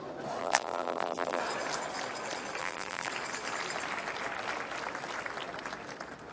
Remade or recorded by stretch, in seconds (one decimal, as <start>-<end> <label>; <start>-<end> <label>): 0.0-0.4 recorded; 0.4-1.4 remade; 1.4-2.6 recorded; 2.6-3.1 remade; 3.1-6.3 recorded